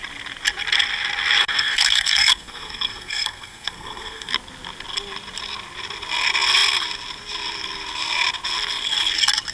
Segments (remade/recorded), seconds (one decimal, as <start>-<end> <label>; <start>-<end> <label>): 0.0-1.4 recorded; 1.4-4.3 remade; 4.3-9.5 recorded